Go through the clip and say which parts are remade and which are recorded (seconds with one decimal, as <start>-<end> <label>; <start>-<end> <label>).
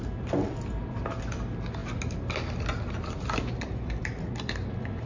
0.0-5.1 recorded